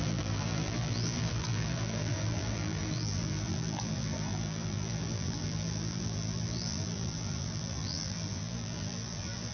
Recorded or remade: remade